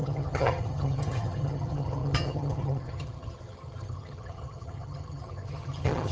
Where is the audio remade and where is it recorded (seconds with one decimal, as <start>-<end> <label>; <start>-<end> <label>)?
0.0-6.1 remade